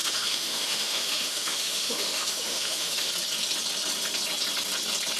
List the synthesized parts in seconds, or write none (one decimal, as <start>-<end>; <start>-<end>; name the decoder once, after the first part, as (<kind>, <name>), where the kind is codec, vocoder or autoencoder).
0.0-3.1 (autoencoder, DAC-VAE)